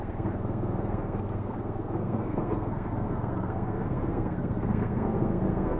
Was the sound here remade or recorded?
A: remade